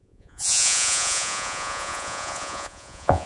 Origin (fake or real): fake